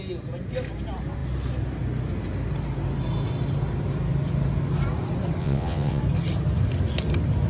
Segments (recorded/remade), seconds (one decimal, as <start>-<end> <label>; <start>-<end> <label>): 0.0-5.4 recorded; 5.4-6.0 remade; 6.0-7.5 recorded